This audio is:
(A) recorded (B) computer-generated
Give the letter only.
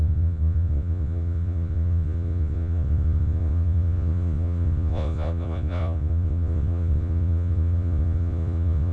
B